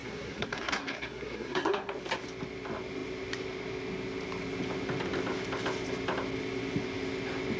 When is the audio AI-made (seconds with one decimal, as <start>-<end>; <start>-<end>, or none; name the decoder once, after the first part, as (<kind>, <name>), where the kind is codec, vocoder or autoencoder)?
0.0-1.9 (codec, SNAC)